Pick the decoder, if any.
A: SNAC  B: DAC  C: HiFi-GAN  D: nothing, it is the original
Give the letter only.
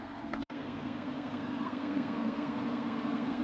A